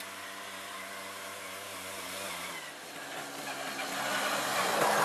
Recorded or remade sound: recorded